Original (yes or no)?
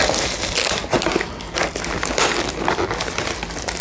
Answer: yes